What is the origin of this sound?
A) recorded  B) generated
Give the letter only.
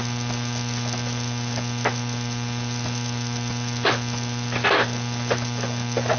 A